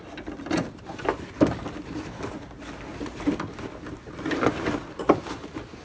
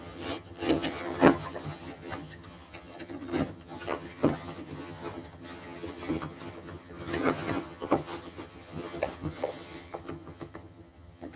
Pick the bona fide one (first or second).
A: first